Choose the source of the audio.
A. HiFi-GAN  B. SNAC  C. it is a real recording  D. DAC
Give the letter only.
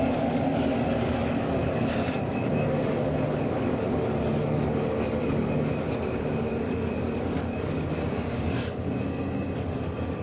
D